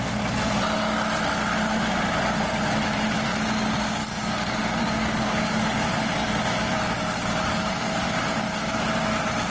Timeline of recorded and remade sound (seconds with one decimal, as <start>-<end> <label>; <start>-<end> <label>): 0.0-4.0 recorded; 4.0-8.7 remade; 8.7-9.5 recorded